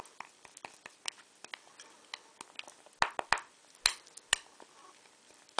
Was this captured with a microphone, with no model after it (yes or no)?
yes